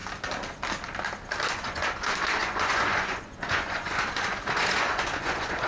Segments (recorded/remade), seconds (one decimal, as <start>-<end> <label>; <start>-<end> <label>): 0.0-1.5 recorded; 1.5-5.7 remade